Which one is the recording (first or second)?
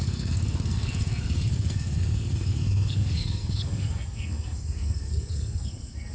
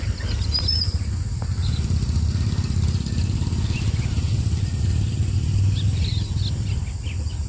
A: second